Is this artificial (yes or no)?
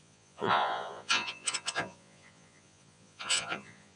yes